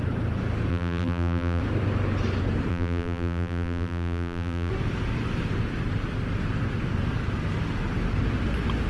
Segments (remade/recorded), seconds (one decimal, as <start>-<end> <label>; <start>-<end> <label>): 0.0-0.7 recorded; 0.7-1.6 remade; 1.6-2.7 recorded; 2.7-4.7 remade; 4.7-8.9 recorded